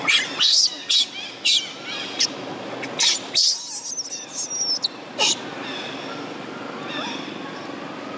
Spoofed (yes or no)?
no